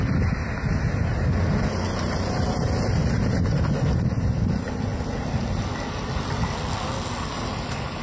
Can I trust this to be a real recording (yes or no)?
yes